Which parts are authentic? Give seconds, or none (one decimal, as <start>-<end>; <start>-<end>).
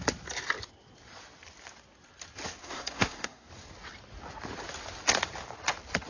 0.0-2.6; 3.5-6.1